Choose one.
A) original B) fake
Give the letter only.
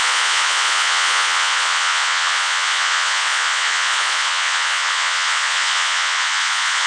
B